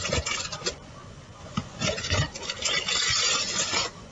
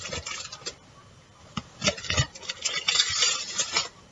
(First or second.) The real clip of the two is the second